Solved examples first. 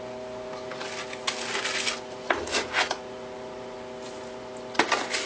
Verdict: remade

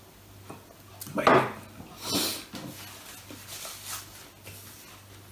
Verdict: recorded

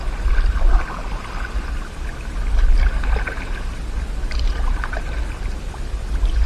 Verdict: recorded